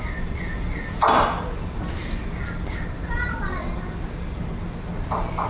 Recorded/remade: recorded